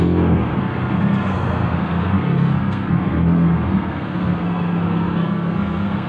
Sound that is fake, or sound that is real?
fake